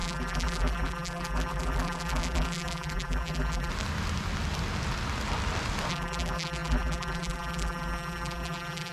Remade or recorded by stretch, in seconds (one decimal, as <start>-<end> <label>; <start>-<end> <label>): 0.0-3.7 remade; 3.7-5.9 recorded; 5.9-8.9 remade

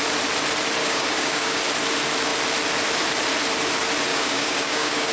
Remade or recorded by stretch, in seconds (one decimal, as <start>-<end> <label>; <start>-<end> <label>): 0.0-0.8 recorded; 0.8-1.6 remade; 1.6-4.1 recorded; 4.1-5.1 remade

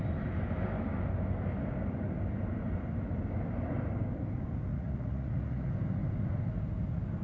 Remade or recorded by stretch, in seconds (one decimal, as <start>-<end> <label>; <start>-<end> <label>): 0.0-4.7 recorded; 4.7-5.7 remade; 5.7-7.2 recorded

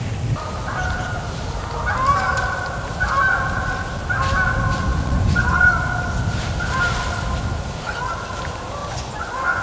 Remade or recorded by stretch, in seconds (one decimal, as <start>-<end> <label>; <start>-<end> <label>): 0.0-4.9 recorded; 4.9-5.7 remade; 5.7-8.8 recorded; 8.8-9.6 remade

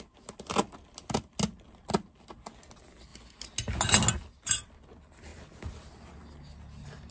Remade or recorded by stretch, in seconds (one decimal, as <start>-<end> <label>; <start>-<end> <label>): 0.0-7.1 recorded

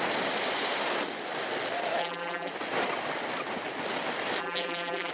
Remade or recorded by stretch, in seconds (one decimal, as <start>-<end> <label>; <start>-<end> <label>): 0.0-2.0 recorded; 2.0-2.5 remade; 2.5-4.4 recorded; 4.4-5.1 remade

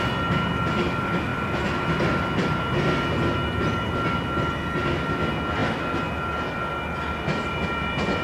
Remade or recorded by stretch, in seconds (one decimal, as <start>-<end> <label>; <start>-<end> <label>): 0.0-8.2 recorded

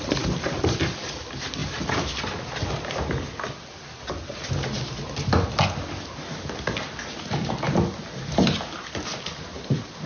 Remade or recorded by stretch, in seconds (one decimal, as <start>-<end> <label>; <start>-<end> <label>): 0.0-10.1 recorded